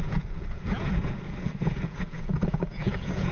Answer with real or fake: fake